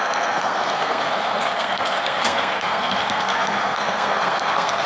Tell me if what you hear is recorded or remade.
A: remade